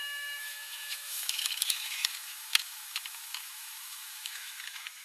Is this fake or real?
fake